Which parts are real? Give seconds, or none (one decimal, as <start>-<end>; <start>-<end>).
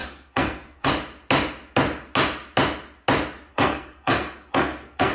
0.9-3.5